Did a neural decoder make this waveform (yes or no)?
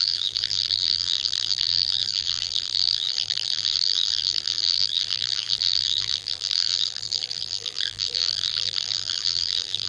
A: yes